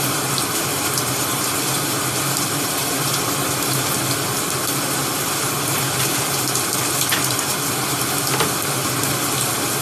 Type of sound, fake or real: real